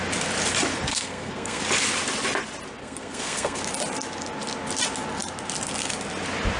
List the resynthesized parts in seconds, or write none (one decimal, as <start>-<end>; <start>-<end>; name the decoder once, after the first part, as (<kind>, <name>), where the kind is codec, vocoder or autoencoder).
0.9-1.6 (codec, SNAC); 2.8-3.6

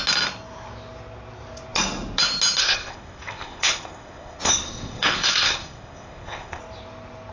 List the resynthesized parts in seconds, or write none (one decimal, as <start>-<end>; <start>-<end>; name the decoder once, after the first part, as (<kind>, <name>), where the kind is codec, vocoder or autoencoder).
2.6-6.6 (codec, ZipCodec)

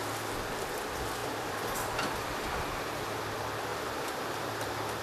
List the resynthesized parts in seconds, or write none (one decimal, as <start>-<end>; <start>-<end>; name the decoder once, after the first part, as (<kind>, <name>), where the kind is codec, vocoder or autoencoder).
1.2-3.2 (vocoder, BigVGAN v2); 3.7-4.2

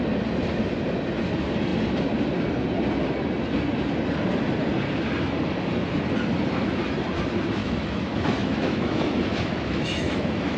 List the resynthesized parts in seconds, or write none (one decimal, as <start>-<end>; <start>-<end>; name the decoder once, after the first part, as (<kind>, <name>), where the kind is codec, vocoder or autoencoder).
7.6-10.6 (autoencoder, DAC-VAE)

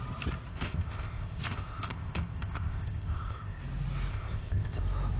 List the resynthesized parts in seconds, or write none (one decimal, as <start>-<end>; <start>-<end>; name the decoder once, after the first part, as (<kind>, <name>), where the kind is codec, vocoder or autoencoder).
0.5-3.6 (codec, ZipCodec); 4.1-4.8